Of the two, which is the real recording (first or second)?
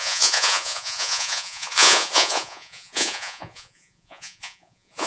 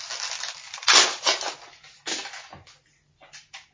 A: second